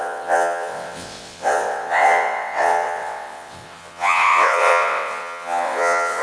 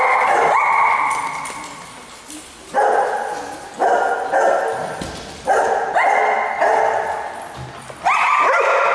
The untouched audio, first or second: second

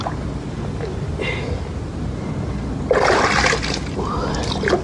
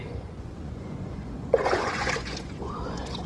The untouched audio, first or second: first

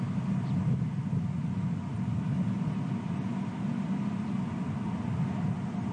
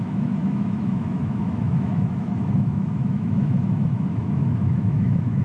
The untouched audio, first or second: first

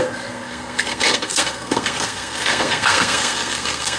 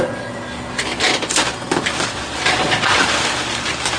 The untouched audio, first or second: second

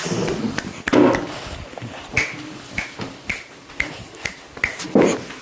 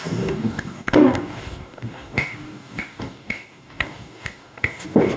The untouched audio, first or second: first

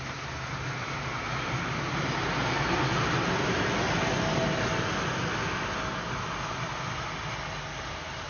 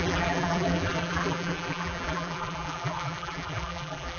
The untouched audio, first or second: first